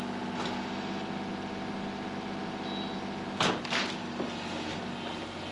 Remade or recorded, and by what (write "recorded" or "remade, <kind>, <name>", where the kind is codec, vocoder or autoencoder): recorded